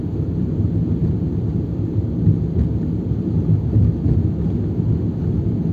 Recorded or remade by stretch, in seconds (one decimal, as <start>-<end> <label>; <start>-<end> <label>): 0.0-5.7 recorded